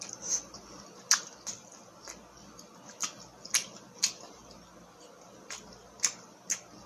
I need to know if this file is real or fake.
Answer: real